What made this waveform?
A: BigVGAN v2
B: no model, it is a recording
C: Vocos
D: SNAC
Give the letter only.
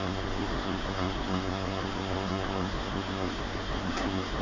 D